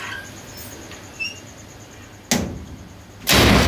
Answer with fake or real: real